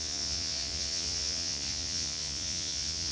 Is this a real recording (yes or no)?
no